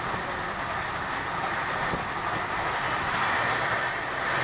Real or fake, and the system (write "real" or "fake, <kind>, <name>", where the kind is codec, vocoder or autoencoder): real